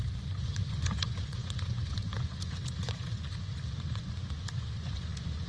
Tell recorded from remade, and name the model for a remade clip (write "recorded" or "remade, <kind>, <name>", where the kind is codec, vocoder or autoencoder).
remade, vocoder, Vocos